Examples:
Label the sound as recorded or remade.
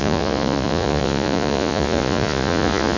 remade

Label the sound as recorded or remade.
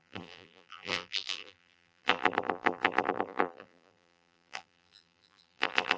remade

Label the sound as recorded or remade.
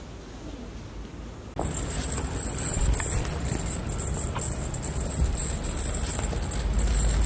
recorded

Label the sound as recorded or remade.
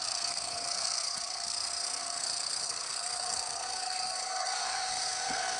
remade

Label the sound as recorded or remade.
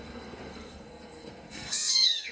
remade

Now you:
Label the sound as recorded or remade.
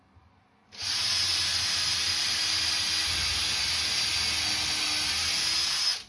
recorded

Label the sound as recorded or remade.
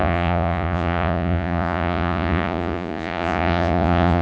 remade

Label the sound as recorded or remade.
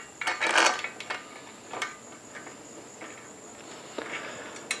recorded